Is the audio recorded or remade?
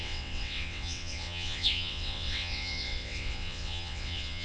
remade